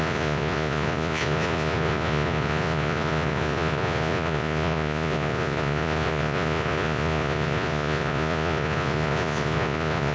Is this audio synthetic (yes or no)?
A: yes